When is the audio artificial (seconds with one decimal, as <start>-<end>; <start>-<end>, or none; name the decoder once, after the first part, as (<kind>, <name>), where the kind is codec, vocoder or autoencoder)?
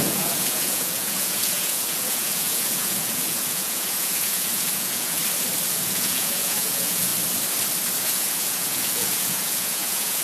0.0-5.2 (vocoder, Vocos); 5.7-7.1; 8.0-10.2